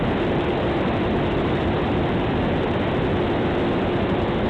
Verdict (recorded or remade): recorded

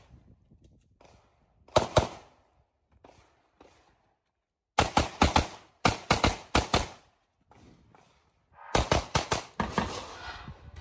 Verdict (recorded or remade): recorded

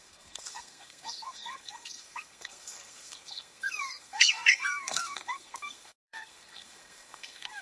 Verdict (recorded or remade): remade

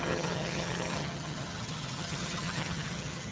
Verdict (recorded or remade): remade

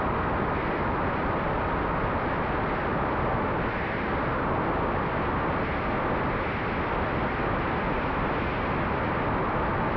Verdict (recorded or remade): recorded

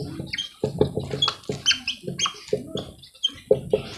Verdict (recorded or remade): recorded